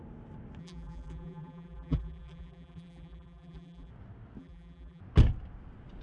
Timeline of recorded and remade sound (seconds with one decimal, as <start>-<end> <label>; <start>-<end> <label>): 0.0-0.6 recorded; 0.6-3.9 remade; 3.9-4.4 recorded; 4.4-5.0 remade; 5.0-6.0 recorded